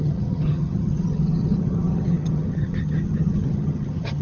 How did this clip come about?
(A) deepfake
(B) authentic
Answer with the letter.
A